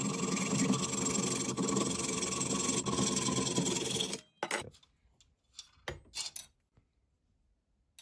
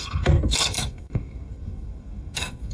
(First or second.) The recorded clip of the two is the first